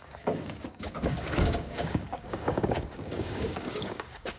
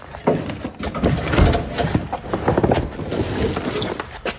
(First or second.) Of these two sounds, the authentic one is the second